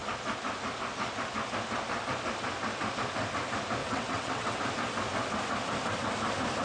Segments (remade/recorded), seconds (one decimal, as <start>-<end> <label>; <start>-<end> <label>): 0.0-3.8 recorded; 3.8-4.6 remade; 4.6-6.6 recorded

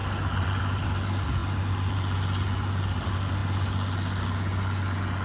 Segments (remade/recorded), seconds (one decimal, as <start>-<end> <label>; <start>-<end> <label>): 0.0-5.2 recorded